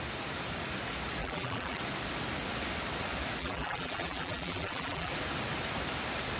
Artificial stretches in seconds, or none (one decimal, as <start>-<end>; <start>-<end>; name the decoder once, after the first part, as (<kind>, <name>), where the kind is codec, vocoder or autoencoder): 1.2-1.8 (vocoder, BigVGAN v2); 3.4-5.1